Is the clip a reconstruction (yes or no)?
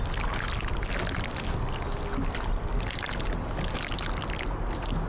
no